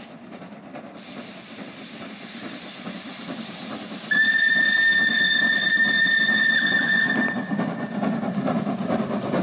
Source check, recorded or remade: recorded